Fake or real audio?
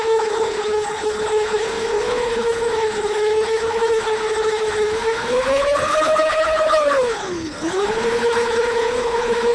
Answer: fake